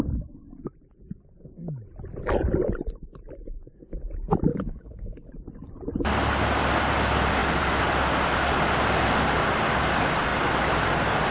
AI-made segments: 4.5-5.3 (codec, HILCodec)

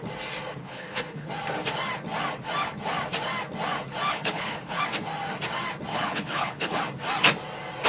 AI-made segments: 0.6-1.3 (codec, HILCodec); 4.1-4.8; 5.9-6.8

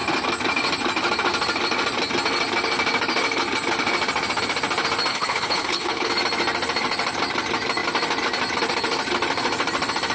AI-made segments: 5.1-6.1 (codec, HILCodec)

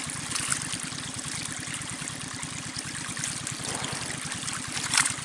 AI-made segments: none

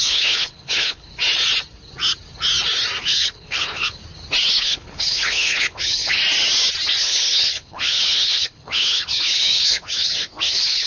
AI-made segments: 0.0-1.1 (codec, HILCodec); 3.0-4.0; 4.5-6.2; 7.0-10.9

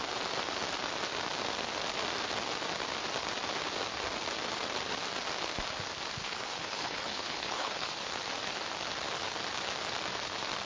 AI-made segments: 6.2-8.1 (codec, HILCodec)

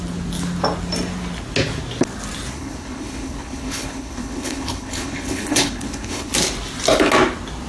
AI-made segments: 2.5-6.3 (codec, HILCodec)